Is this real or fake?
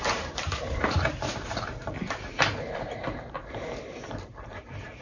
fake